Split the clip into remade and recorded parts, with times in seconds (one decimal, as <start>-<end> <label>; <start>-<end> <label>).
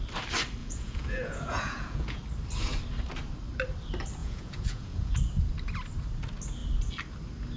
0.0-0.6 recorded; 0.6-2.2 remade; 2.2-4.2 recorded; 4.2-5.1 remade; 5.1-7.6 recorded